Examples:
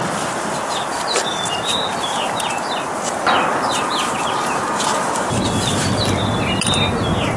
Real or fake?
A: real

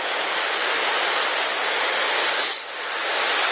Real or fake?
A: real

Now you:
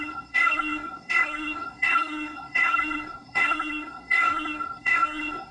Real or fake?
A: fake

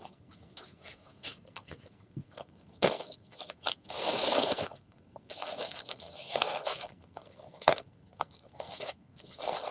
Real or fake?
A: fake